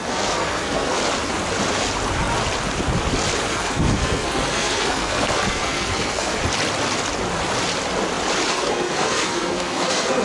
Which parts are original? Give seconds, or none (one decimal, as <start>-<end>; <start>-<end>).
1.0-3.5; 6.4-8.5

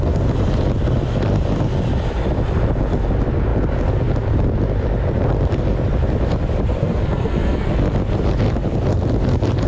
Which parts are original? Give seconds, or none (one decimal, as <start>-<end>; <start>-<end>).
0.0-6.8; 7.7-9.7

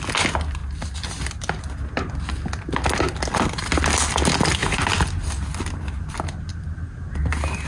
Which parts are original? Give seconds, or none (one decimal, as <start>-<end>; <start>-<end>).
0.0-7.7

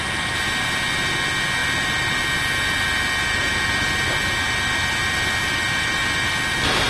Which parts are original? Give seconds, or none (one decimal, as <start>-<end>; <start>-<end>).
0.0-6.9